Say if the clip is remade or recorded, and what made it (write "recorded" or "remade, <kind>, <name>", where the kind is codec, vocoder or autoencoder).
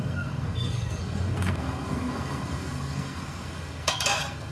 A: remade, codec, SNAC